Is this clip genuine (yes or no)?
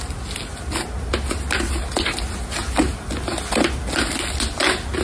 yes